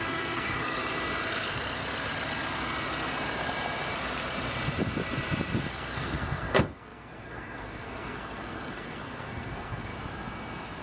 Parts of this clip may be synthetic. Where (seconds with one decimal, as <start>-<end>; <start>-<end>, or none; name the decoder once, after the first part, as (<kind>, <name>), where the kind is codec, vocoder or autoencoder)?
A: 0.0-0.8 (codec, SNAC); 1.3-1.8; 5.7-9.9